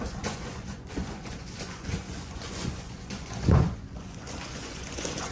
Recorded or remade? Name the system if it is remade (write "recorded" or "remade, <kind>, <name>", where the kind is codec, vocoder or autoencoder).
remade, vocoder, Vocos